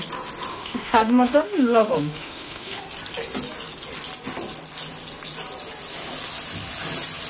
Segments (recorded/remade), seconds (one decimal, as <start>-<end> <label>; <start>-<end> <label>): 0.0-0.5 recorded; 0.5-2.8 remade; 2.8-7.3 recorded